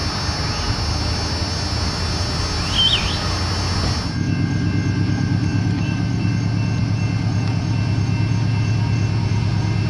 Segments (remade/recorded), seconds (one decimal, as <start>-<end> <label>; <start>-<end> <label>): 0.0-5.5 recorded; 5.5-6.3 remade; 6.3-9.9 recorded